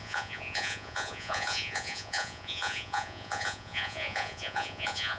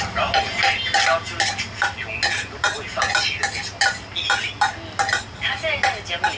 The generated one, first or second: first